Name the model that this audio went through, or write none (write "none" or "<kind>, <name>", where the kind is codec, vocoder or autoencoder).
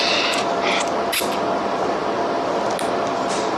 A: none